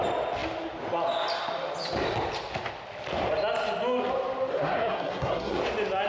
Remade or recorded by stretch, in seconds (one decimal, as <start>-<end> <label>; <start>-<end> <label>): 0.0-4.5 recorded; 4.5-5.6 remade; 5.6-6.1 recorded